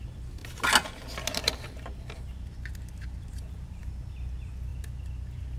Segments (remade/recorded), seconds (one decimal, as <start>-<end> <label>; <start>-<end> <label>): 0.0-5.6 recorded